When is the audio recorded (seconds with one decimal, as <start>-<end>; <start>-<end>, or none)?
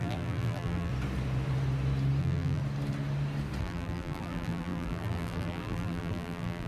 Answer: 0.9-2.2; 2.6-3.6